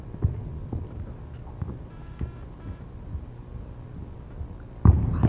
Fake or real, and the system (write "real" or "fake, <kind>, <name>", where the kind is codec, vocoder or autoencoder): real